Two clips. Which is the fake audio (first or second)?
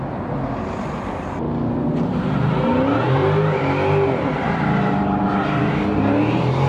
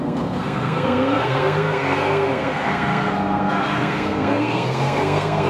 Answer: second